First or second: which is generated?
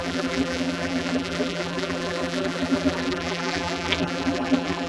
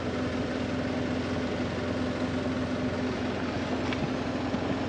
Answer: first